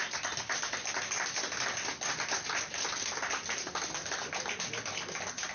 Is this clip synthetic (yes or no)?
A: no